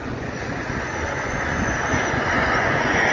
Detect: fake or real fake